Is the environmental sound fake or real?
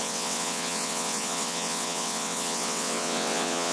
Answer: fake